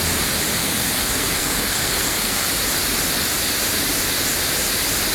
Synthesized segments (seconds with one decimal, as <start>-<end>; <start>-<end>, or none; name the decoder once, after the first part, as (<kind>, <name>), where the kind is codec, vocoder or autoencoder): 0.6-2.5 (codec, SNAC)